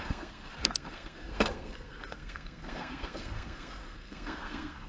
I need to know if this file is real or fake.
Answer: fake